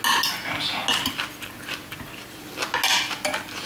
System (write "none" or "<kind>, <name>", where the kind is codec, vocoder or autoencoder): none